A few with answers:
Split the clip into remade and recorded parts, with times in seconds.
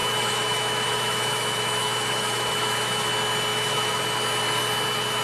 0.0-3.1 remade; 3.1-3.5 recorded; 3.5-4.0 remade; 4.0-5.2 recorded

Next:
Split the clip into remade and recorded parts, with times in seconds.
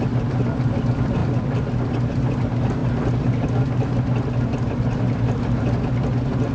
0.0-6.5 recorded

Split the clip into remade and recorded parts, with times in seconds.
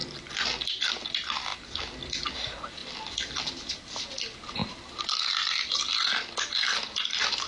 0.0-7.5 recorded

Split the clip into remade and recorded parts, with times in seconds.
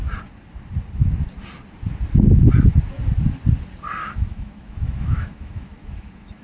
0.0-4.0 recorded; 4.0-6.4 remade